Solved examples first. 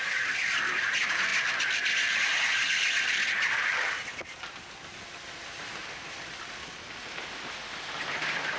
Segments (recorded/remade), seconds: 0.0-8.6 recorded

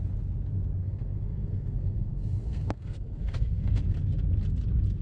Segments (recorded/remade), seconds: 0.0-0.8 recorded; 0.8-3.8 remade; 3.8-5.0 recorded

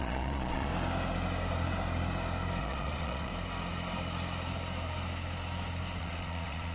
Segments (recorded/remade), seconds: 0.0-0.7 remade; 0.7-2.6 recorded; 2.6-3.3 remade; 3.3-6.0 recorded; 6.0-6.7 remade

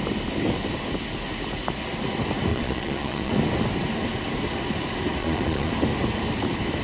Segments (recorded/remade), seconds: 0.0-2.5 recorded; 2.5-3.3 remade; 3.3-5.2 recorded; 5.2-5.7 remade; 5.7-6.8 recorded

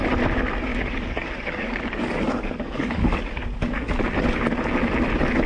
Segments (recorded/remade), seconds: 0.0-0.7 recorded; 0.7-4.0 remade; 4.0-5.5 recorded

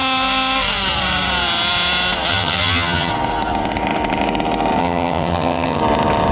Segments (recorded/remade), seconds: 0.0-2.3 recorded; 2.3-3.1 remade; 3.1-4.8 recorded; 4.8-5.8 remade; 5.8-6.3 recorded

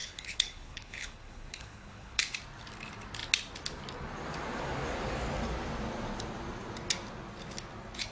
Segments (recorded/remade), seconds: 0.0-2.2 remade; 2.2-8.1 recorded

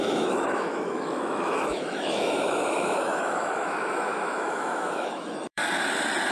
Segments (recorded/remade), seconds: 0.0-5.6 remade; 5.6-6.3 recorded